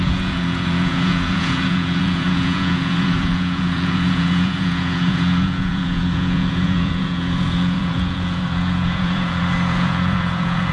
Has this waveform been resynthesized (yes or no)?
yes